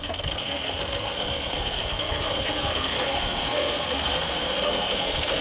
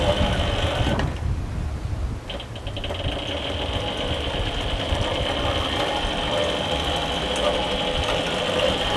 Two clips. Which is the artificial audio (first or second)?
first